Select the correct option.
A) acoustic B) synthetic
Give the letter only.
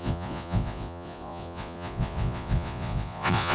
B